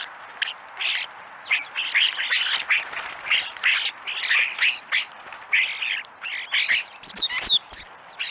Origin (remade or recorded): recorded